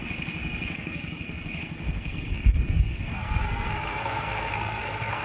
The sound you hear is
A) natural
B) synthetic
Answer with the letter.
B